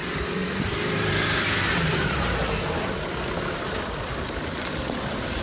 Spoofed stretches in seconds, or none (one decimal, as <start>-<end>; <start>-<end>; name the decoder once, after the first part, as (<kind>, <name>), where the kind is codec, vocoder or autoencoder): 0.0-2.9 (vocoder, BigVGAN v2)